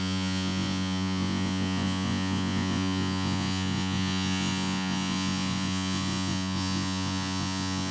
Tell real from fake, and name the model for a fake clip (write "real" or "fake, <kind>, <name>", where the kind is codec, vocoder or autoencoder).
fake, vocoder, Vocos